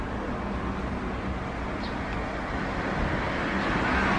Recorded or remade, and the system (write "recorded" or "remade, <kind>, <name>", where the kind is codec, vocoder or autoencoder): recorded